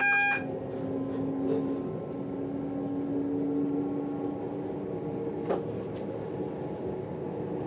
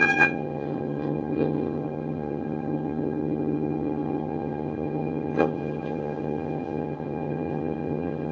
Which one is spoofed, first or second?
second